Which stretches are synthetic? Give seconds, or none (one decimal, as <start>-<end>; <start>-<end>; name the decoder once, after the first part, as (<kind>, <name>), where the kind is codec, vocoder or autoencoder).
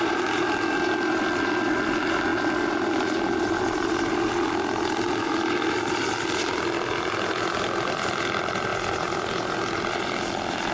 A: none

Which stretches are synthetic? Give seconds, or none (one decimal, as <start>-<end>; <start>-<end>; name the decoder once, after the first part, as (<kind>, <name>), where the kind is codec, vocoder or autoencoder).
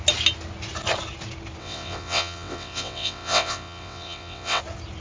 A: 1.6-4.6 (vocoder, WaveNeXt)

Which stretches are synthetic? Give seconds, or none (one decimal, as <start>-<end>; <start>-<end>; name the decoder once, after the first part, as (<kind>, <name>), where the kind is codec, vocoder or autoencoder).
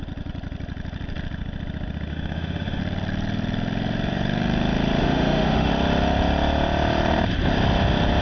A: 2.1-2.8 (autoencoder, DAC-VAE); 5.0-5.7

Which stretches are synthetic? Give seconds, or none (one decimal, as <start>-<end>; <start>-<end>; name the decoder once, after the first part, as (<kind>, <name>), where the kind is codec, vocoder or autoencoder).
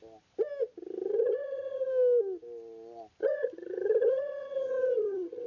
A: 1.1-1.9 (vocoder, HiFi-GAN); 3.2-5.5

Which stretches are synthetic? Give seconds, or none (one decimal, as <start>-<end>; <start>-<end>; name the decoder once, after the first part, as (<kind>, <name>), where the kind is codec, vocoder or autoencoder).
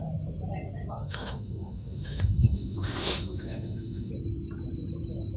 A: 0.9-4.1 (autoencoder, DAC-VAE)